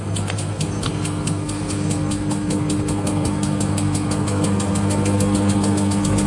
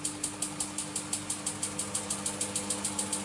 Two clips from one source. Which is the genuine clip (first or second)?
second